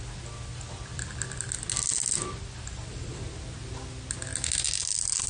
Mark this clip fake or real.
real